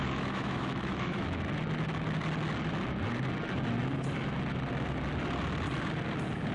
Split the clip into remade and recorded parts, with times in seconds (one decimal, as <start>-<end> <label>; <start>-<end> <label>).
0.0-1.4 remade; 1.4-6.5 recorded